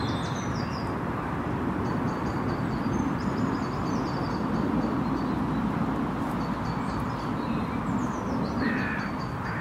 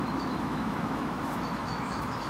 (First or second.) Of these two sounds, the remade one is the second